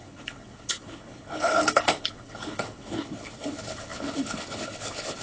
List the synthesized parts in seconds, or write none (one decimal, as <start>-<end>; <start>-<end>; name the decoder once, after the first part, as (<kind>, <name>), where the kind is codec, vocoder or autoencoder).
0.0-5.2 (codec, HILCodec)